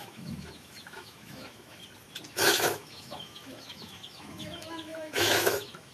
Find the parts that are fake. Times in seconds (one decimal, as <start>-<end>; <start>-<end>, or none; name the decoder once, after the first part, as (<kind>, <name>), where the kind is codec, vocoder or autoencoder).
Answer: 0.0-1.8 (autoencoder, DAC-VAE); 2.3-5.9